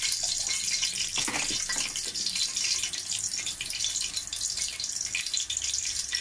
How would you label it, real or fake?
real